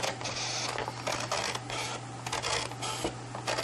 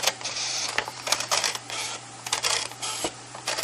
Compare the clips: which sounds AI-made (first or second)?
second